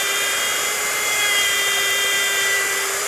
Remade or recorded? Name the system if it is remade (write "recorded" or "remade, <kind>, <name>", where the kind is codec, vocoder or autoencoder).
remade, vocoder, BigVGAN v2